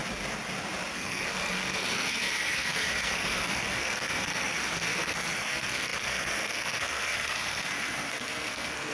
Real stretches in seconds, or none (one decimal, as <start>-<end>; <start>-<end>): 0.0-0.9